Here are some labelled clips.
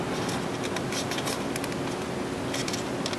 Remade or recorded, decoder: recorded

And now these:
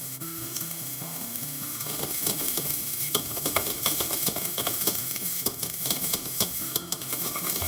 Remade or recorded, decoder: remade, autoencoder, DAC-VAE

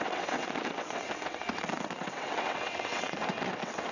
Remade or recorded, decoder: remade, vocoder, WaveNeXt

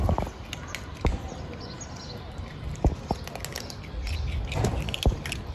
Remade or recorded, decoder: recorded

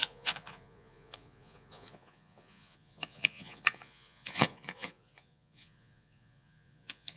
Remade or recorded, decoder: remade, vocoder, Vocos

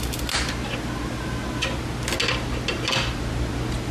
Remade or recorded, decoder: recorded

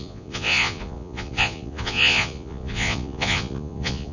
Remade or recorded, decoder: remade, vocoder, Vocos